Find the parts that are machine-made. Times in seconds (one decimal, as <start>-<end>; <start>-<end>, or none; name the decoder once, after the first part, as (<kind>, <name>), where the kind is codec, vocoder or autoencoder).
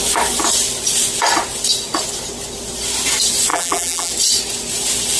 3.5-4.1 (vocoder, BigVGAN v2)